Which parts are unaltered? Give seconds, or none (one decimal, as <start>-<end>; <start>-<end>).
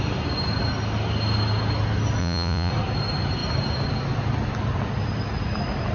0.0-2.2; 2.7-5.9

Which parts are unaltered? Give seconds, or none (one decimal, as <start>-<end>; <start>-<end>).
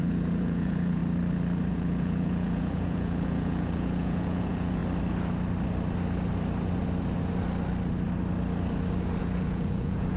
1.0-1.7; 4.8-9.2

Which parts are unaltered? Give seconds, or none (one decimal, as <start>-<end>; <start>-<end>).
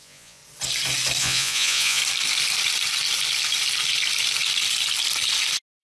0.4-1.2; 2.0-5.8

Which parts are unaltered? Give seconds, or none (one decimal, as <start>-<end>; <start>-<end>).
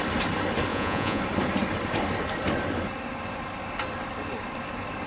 0.0-0.7; 1.2-5.1